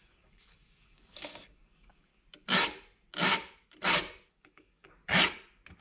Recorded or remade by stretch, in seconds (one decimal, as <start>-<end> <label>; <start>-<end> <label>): 0.0-2.1 remade; 2.1-4.3 recorded; 4.3-5.0 remade; 5.0-5.8 recorded

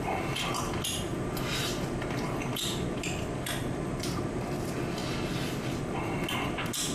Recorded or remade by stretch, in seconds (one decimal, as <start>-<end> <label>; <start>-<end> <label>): 0.0-6.9 recorded

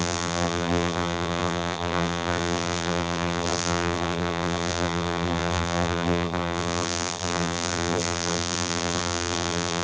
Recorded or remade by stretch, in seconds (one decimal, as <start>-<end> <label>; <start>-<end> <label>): 0.0-9.8 remade